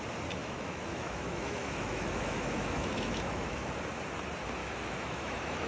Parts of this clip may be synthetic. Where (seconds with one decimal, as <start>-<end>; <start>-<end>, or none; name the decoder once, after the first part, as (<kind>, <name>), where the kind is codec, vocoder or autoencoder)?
0.4-3.7 (autoencoder, DAC-VAE); 4.6-5.7